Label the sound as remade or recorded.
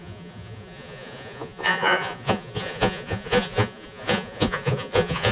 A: remade